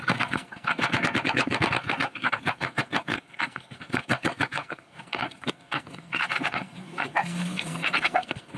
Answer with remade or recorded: remade